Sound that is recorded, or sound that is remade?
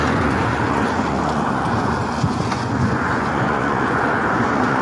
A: remade